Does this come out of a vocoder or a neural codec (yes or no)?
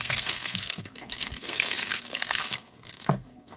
yes